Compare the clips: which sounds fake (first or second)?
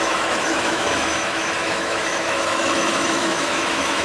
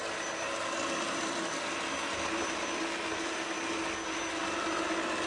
first